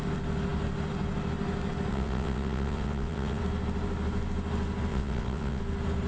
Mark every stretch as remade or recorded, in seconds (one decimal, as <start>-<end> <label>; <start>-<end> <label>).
0.0-1.9 recorded; 1.9-3.4 remade; 3.4-4.9 recorded; 4.9-5.6 remade; 5.6-6.1 recorded